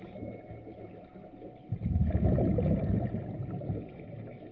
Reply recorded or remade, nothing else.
recorded